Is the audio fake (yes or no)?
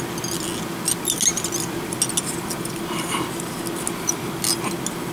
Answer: no